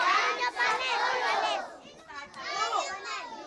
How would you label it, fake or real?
real